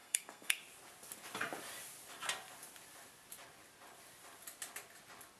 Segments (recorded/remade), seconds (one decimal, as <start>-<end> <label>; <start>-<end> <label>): 0.0-0.6 remade; 0.6-5.4 recorded